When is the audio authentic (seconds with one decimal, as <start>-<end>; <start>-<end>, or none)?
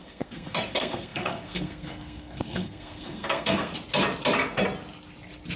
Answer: 3.7-5.6